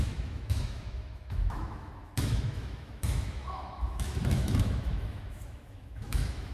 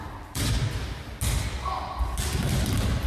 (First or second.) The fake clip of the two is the first